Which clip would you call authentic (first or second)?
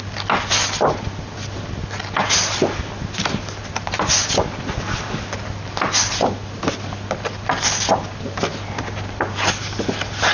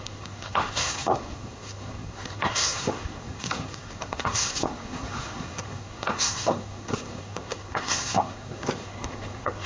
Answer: first